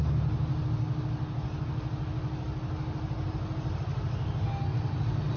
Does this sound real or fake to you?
real